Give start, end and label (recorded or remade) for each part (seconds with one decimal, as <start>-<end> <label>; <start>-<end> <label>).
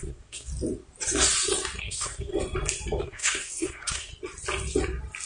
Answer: 0.0-0.5 remade; 0.5-1.8 recorded; 1.8-2.3 remade; 2.3-3.0 recorded; 3.0-4.1 remade; 4.1-5.3 recorded